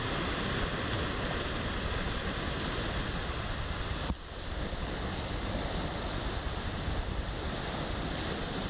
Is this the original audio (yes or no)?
yes